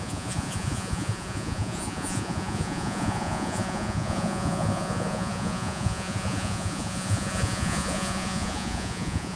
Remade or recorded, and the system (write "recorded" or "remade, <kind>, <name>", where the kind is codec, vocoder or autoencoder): remade, vocoder, Vocos